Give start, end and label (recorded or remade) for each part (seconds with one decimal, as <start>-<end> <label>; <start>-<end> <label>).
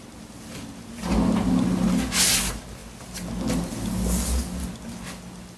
0.0-5.6 recorded